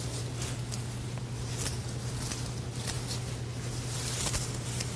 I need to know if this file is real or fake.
real